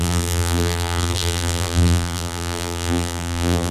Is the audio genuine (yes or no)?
no